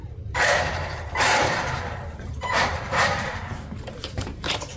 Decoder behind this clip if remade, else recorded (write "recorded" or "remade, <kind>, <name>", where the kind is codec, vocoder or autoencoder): remade, vocoder, BigVGAN v2